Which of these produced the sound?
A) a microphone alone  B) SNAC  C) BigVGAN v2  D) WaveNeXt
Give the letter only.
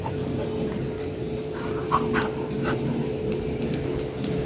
A